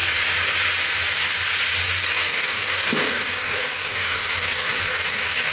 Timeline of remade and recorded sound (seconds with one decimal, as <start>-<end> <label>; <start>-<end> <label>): 0.0-2.1 recorded; 2.1-5.5 remade